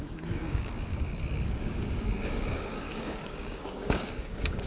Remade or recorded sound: remade